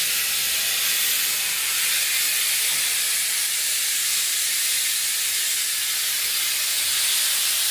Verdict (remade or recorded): recorded